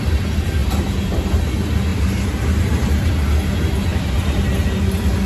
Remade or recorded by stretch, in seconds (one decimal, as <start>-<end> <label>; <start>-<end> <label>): 0.0-0.6 recorded; 0.6-1.4 remade; 1.4-1.9 recorded; 1.9-3.1 remade; 3.1-3.9 recorded; 3.9-5.3 remade